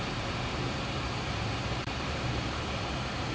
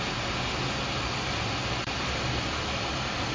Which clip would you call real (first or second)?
second